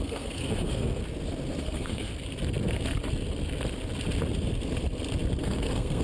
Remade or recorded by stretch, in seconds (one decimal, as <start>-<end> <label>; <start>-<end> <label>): 0.0-1.0 remade; 1.0-1.6 recorded; 1.6-2.1 remade; 2.1-5.4 recorded; 5.4-6.0 remade